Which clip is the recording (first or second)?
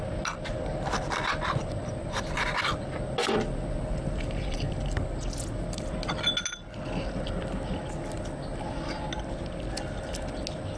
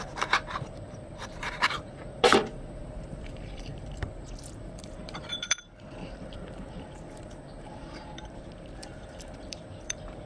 first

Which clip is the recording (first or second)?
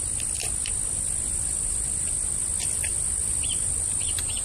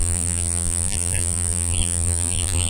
first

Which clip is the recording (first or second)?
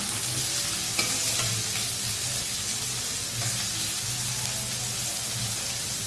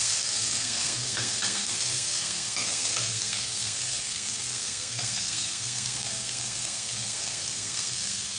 first